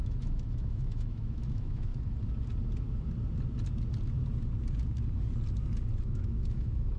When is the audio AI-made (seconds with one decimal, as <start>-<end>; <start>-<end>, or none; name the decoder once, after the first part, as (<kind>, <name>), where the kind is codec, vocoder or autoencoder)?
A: 0.0-1.9 (autoencoder, DAC-VAE); 6.0-7.0